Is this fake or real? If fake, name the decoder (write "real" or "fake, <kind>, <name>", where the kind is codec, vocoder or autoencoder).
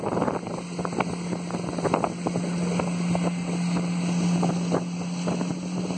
real